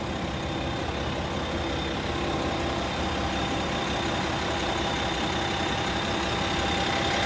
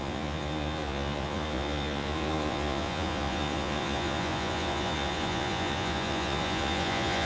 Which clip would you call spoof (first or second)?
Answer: second